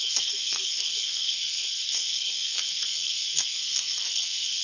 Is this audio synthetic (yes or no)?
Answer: yes